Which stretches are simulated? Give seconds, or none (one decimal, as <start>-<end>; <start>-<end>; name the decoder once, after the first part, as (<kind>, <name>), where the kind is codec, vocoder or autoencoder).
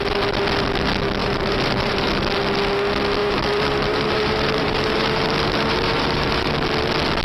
1.2-2.2 (vocoder, BigVGAN v2); 3.2-6.5